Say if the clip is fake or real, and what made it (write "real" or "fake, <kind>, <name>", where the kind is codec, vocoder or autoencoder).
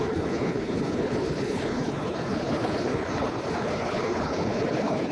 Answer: fake, codec, HILCodec